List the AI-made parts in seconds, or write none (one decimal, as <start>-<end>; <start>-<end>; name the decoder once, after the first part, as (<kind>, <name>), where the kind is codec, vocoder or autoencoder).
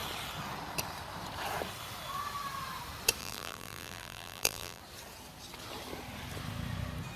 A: 3.2-4.8 (vocoder, BigVGAN v2)